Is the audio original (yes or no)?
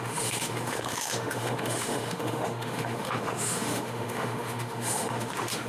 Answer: no